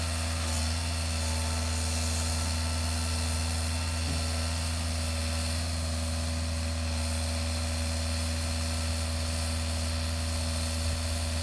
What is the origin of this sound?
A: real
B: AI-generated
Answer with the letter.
A